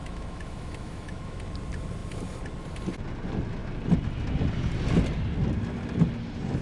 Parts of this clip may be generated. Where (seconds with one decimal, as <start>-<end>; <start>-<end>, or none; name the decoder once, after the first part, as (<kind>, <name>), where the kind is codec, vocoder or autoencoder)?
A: 0.0-1.4 (autoencoder, DAC-VAE)